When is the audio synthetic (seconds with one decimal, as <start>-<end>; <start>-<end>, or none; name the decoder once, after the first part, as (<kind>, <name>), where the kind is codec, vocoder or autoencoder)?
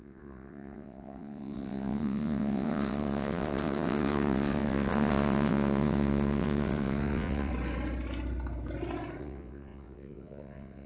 0.0-7.5 (vocoder, WaveNeXt); 9.2-10.9